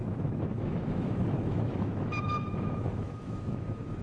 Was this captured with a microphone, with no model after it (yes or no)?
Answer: no